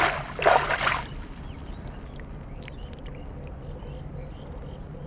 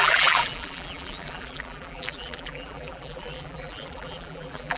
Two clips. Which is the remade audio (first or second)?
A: second